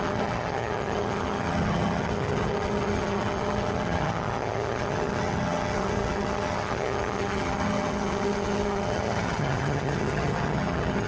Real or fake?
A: fake